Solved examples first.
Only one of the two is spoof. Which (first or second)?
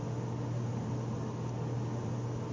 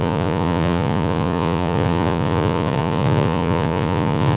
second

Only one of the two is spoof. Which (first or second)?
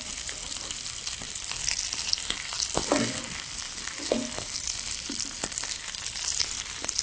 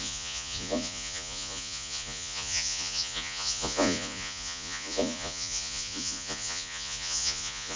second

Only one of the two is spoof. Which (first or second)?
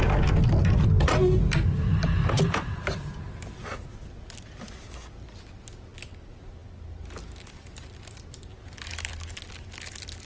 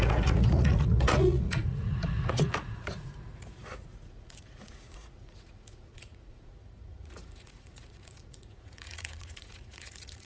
second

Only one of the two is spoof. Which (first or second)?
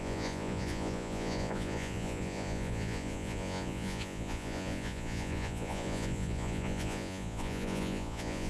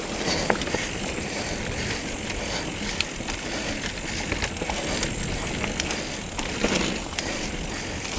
first